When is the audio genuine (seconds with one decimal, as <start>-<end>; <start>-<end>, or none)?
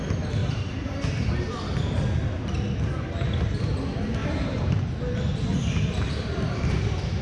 0.0-0.4; 0.9-4.2; 4.8-7.2